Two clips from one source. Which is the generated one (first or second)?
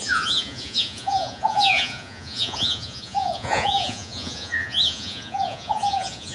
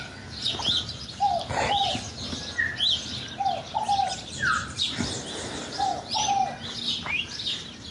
first